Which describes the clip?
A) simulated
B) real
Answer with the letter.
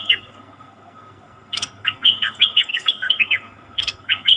A